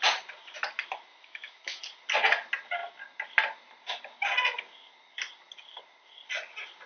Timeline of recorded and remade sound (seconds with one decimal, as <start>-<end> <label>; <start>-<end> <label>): 0.0-1.1 recorded; 1.1-1.8 remade; 1.8-6.9 recorded